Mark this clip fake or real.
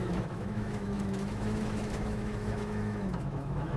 fake